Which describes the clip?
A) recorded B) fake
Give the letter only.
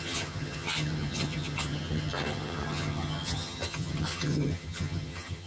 B